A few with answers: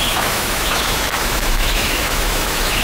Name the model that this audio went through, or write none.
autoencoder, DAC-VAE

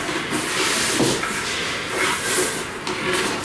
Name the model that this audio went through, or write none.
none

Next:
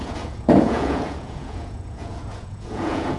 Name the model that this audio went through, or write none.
vocoder, Vocos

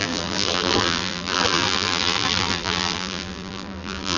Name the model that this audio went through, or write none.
vocoder, BigVGAN v2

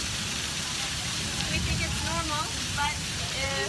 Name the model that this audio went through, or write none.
vocoder, BigVGAN v2